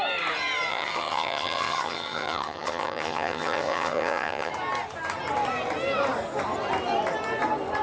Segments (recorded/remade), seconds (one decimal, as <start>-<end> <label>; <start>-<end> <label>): 0.0-0.7 recorded; 0.7-4.5 remade; 4.5-7.8 recorded